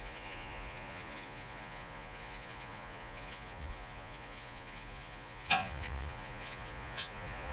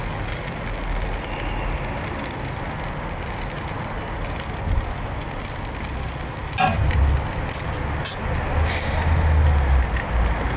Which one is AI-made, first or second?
first